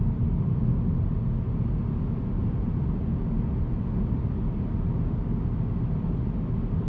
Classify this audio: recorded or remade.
recorded